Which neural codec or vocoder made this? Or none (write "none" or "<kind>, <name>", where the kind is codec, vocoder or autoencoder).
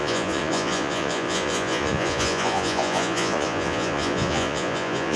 vocoder, Vocos